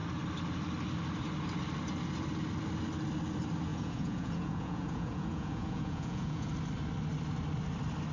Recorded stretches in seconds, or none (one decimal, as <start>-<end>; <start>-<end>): 0.0-3.7; 6.5-8.1

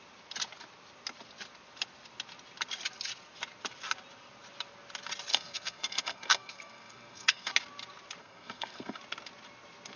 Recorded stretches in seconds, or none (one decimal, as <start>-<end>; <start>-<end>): 0.0-5.3; 7.5-8.2; 9.0-10.0

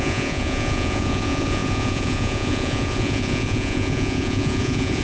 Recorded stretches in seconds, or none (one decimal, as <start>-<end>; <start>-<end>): none

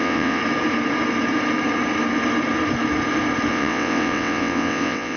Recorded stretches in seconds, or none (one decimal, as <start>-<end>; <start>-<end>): 0.4-3.5

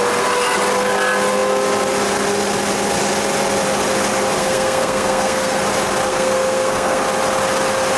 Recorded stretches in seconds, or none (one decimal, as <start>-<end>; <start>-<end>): 0.0-4.4; 5.6-6.1; 7.0-8.0

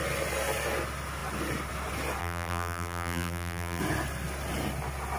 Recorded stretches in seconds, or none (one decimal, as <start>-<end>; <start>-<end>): 0.0-2.2; 3.8-5.2